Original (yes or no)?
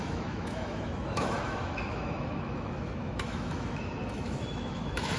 no